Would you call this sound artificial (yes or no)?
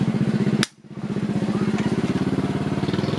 no